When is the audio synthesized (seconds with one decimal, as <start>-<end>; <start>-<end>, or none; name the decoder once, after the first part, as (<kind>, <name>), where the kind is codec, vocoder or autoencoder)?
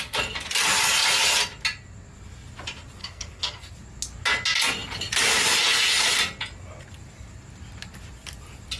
3.0-3.7 (codec, SNAC)